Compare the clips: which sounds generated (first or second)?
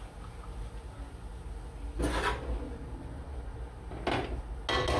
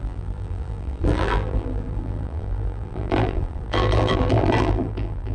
second